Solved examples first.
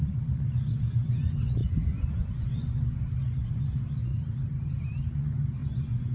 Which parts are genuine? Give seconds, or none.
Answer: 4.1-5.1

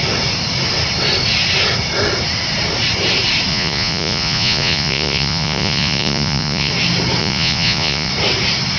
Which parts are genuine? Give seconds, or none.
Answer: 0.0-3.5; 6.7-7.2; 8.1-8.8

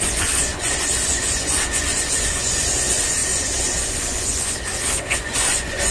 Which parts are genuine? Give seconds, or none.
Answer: none

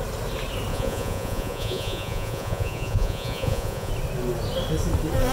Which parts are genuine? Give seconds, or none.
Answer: 0.0-0.7; 3.9-5.3

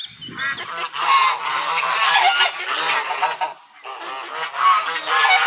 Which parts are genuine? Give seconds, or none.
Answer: 0.0-5.5

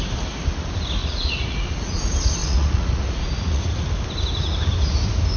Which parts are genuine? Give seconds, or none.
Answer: 0.0-1.0; 2.0-2.4; 3.6-5.4

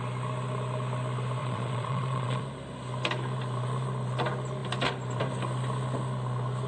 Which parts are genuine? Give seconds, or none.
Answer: 0.0-1.4; 2.4-6.7